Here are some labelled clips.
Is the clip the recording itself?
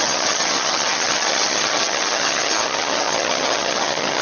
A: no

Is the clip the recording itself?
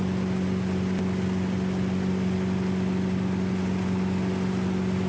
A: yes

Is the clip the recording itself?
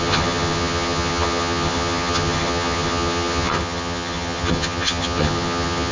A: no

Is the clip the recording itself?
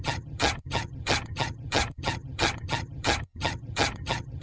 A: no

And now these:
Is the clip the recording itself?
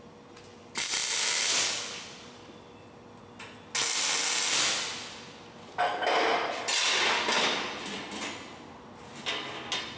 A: yes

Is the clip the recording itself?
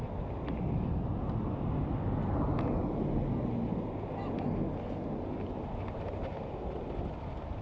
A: yes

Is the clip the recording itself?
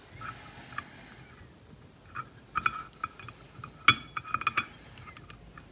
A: yes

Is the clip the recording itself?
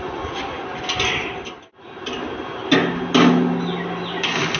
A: yes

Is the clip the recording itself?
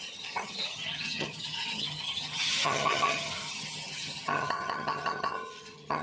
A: no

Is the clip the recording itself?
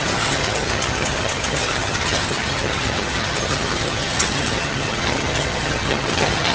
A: no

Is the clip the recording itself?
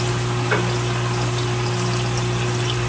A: yes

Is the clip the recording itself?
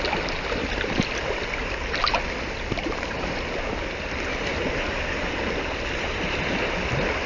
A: yes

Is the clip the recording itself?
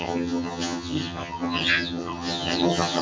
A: no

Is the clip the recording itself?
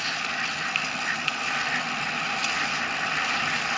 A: yes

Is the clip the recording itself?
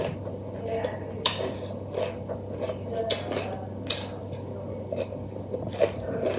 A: yes